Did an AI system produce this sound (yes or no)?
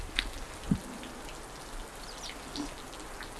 no